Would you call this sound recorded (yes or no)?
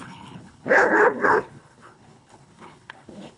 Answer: no